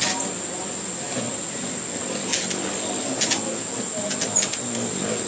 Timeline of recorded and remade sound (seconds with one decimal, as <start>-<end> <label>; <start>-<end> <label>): 0.0-5.3 recorded